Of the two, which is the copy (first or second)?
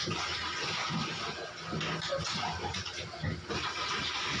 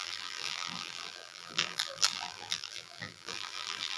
second